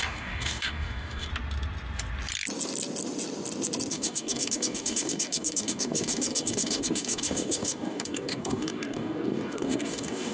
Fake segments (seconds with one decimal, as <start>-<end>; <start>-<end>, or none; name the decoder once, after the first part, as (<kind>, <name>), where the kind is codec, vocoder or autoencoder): 0.0-1.3 (codec, DAC); 3.9-10.3

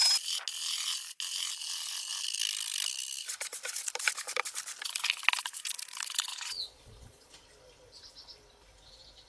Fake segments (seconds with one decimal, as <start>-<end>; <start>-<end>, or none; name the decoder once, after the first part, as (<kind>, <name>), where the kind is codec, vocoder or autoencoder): 6.3-7.3 (vocoder, Vocos)

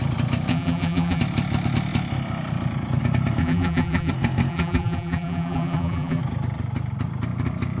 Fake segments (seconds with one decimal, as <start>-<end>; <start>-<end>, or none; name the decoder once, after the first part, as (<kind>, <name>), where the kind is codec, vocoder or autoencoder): 0.5-1.2 (vocoder, BigVGAN v2); 3.4-4.1; 4.5-6.2

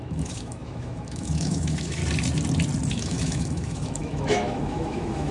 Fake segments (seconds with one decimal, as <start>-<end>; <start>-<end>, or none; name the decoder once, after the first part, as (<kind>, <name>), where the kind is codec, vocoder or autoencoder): 0.0-2.0 (autoencoder, DAC-VAE); 2.9-5.3